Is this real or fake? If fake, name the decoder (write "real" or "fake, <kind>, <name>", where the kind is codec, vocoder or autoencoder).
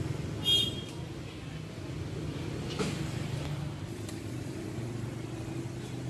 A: real